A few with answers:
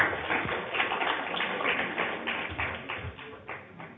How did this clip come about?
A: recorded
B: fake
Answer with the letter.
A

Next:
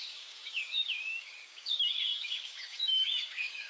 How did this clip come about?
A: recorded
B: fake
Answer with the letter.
B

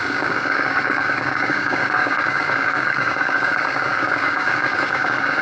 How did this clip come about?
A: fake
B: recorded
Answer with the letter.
A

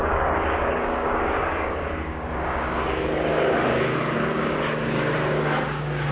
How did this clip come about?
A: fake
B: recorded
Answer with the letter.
A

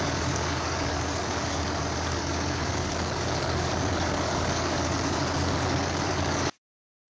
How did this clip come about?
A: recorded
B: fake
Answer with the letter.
B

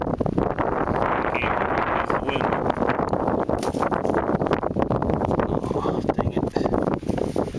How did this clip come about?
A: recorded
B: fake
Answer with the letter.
A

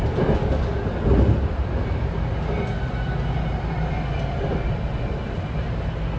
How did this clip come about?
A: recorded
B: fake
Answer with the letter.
A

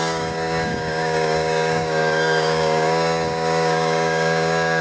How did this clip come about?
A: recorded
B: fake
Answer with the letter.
B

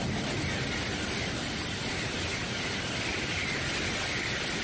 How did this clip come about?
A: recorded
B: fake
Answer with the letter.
A